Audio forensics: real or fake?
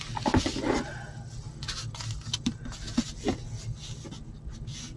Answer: real